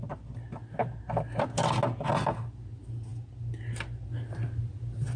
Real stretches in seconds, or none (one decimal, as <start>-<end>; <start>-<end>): 0.0-5.2